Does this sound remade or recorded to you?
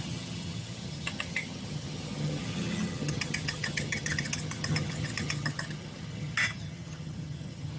remade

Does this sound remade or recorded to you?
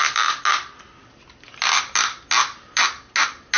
recorded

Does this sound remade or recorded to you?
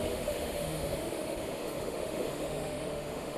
remade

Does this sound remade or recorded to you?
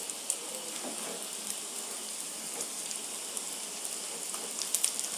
recorded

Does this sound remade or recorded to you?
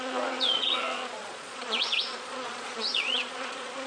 remade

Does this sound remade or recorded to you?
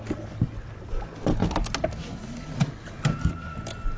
recorded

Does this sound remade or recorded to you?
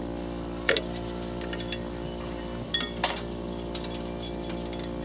recorded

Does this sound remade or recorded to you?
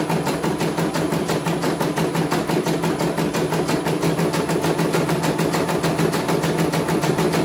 recorded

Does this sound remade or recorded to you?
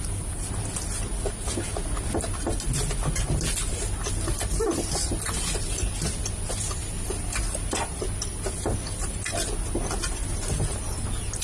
recorded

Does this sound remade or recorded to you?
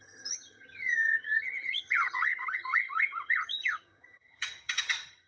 remade